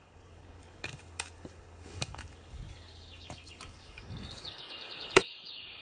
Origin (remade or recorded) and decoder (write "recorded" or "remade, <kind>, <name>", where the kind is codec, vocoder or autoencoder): remade, codec, DAC